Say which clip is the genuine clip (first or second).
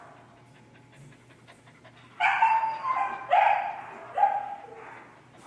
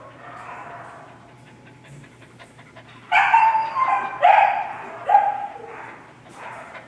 first